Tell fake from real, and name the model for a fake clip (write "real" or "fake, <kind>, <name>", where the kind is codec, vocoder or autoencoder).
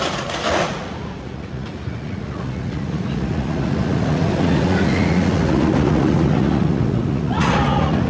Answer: fake, vocoder, Vocos